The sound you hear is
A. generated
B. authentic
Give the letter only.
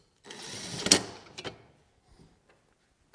B